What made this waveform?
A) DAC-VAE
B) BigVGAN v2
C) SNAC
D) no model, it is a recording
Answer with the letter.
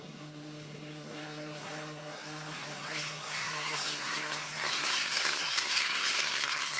C